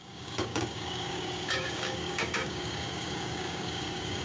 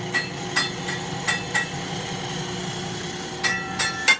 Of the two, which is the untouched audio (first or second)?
second